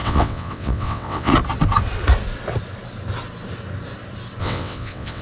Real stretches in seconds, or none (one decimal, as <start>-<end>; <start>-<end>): 1.3-4.4